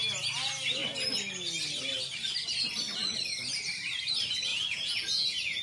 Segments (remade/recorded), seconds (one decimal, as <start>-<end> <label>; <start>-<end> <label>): 0.0-4.5 recorded; 4.5-5.6 remade